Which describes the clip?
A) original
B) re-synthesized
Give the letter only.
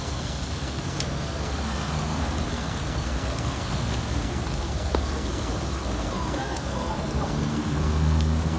B